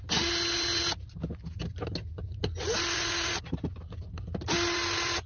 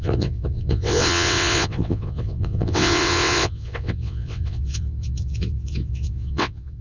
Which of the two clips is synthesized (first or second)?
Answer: second